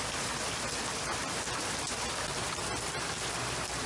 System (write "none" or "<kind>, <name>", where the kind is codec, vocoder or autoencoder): none